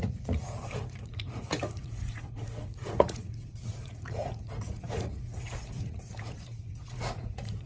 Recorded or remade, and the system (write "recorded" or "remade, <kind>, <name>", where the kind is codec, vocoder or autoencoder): remade, vocoder, Vocos